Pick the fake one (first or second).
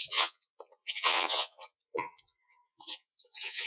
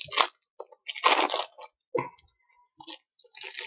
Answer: first